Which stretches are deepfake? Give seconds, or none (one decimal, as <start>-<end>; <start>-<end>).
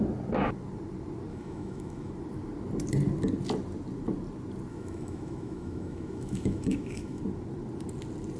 1.3-2.1; 4.7-7.2